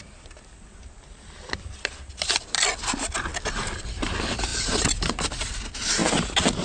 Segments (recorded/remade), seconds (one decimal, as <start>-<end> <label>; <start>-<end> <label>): 0.0-6.6 recorded

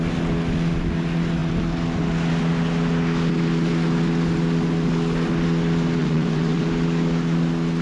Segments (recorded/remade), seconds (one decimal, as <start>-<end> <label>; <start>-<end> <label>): 0.0-6.0 recorded; 6.0-6.6 remade; 6.6-7.8 recorded

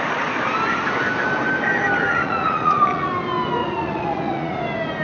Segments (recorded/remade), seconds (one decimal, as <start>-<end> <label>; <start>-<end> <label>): 0.0-2.1 recorded; 2.1-3.1 remade; 3.1-3.6 recorded; 3.6-4.6 remade; 4.6-5.0 recorded

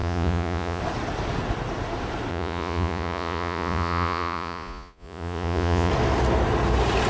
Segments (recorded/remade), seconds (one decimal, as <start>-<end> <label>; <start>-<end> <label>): 0.0-0.8 remade; 0.8-2.3 recorded; 2.3-5.9 remade; 5.9-7.1 recorded

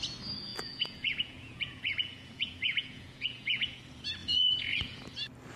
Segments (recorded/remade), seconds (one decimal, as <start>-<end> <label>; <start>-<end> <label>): 0.0-0.5 recorded; 0.5-3.8 remade; 3.8-4.2 recorded; 4.2-5.0 remade; 5.0-5.6 recorded